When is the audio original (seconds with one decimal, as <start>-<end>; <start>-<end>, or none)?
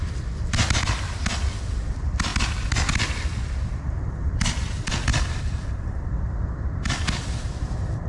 2.3-4.1